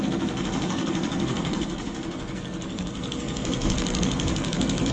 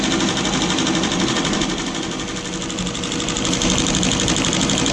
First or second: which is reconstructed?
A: first